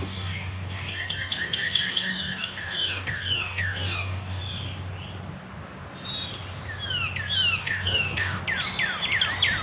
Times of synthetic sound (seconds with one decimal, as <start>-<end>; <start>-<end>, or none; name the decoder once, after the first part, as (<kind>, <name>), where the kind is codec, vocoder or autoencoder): 0.0-4.4 (codec, DAC); 7.6-8.4